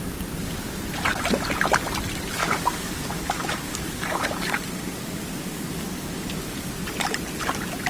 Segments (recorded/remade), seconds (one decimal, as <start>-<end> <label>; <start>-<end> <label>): 0.0-2.4 recorded; 2.4-6.7 remade; 6.7-7.9 recorded